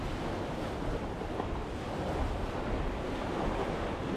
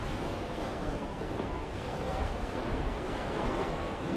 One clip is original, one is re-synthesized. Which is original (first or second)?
first